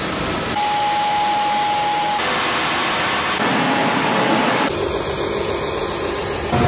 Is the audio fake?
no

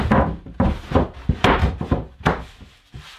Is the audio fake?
no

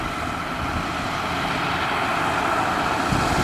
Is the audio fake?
no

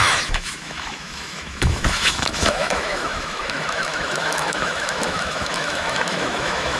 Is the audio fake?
yes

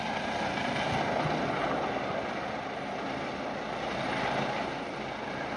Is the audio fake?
no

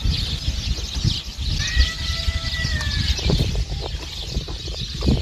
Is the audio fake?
no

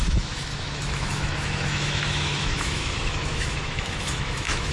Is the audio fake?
yes